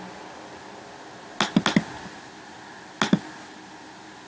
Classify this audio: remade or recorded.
recorded